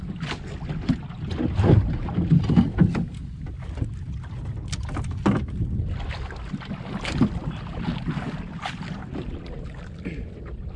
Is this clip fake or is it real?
real